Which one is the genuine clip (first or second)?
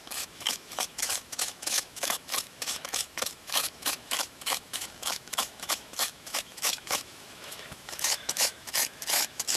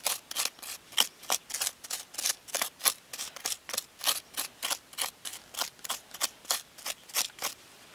second